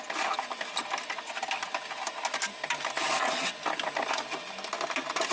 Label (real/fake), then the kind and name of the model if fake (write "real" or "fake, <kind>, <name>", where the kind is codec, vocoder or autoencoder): real